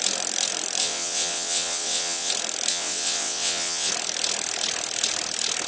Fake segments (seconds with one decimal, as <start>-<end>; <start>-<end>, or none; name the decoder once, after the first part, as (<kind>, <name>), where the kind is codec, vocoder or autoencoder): 0.8-2.3 (vocoder, WaveNeXt); 2.7-3.9